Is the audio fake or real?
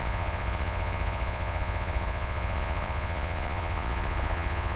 fake